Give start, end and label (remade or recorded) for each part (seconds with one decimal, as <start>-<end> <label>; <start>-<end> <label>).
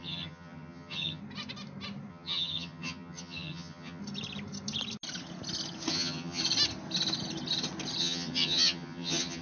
0.0-1.2 remade; 1.2-2.1 recorded; 2.1-4.0 remade; 4.0-5.9 recorded; 5.9-6.4 remade; 6.4-8.0 recorded; 8.0-9.4 remade